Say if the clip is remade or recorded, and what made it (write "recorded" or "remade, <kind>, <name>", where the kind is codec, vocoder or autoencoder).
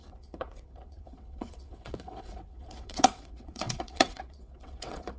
remade, vocoder, WaveNeXt